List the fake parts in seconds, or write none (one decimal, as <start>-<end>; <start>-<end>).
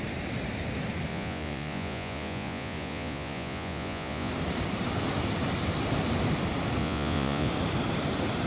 1.1-4.3; 6.8-7.5